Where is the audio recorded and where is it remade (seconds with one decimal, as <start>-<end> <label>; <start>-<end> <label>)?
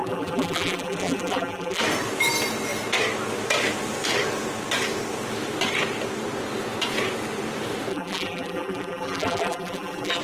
0.0-1.8 remade; 1.8-7.9 recorded; 7.9-10.2 remade